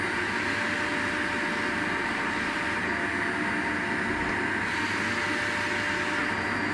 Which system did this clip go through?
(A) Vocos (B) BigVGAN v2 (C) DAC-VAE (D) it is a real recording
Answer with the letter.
D